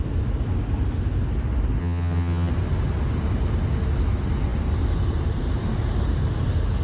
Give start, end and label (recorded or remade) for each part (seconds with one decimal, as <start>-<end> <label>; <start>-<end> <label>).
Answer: 0.0-1.8 recorded; 1.8-2.5 remade; 2.5-6.8 recorded